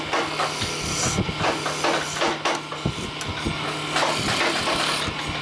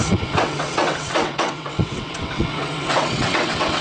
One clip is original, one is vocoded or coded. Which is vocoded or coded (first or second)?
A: second